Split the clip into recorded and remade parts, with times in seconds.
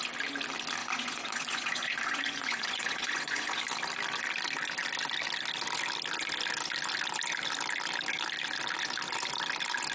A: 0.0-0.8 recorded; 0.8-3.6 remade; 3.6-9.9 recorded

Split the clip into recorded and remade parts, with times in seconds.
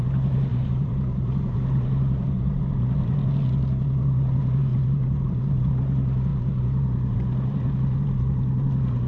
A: 0.0-0.5 recorded; 0.5-2.6 remade; 2.6-4.7 recorded; 4.7-5.7 remade; 5.7-9.1 recorded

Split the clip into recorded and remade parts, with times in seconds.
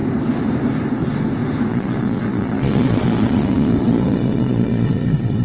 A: 0.0-1.7 recorded; 1.7-5.4 remade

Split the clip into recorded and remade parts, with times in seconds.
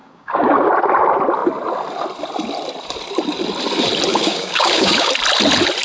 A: 0.0-0.7 remade; 0.7-4.1 recorded; 4.1-5.1 remade; 5.1-5.8 recorded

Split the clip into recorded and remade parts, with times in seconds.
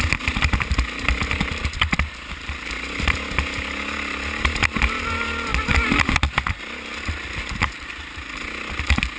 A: 0.0-9.2 recorded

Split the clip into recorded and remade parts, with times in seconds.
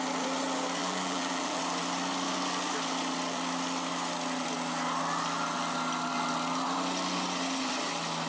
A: 0.0-0.8 recorded; 0.8-1.6 remade; 1.6-8.3 recorded